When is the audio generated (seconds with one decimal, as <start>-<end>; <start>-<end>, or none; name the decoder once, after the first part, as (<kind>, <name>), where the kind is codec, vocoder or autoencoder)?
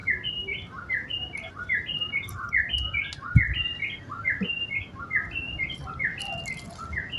none